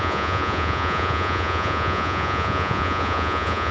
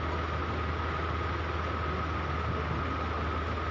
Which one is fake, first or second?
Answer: first